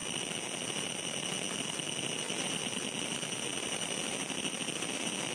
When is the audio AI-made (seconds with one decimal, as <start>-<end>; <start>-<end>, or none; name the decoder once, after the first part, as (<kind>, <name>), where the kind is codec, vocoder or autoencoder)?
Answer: 2.0-5.3 (vocoder, BigVGAN v2)